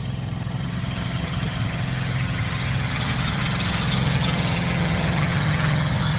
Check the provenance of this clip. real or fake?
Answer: fake